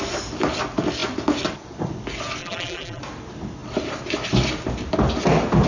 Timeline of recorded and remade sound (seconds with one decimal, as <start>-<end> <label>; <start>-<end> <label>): 0.0-2.4 recorded; 2.4-3.0 remade; 3.0-5.7 recorded